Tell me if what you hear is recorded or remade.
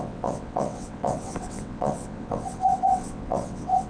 remade